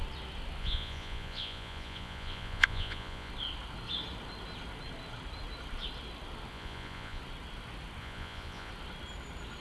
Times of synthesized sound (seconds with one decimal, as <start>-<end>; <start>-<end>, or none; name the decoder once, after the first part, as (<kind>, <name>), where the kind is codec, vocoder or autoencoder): 0.6-3.3 (vocoder, Vocos); 6.5-7.2; 8.0-8.7